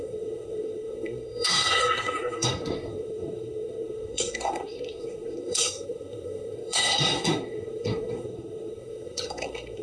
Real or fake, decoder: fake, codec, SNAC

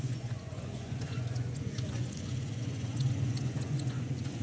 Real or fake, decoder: fake, vocoder, Vocos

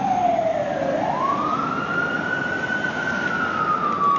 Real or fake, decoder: real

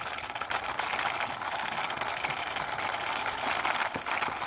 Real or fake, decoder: real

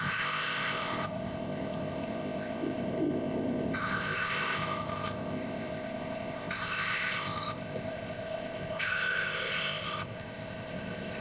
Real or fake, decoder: fake, codec, ZipCodec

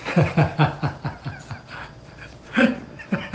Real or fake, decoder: real